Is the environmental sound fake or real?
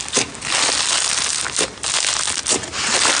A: real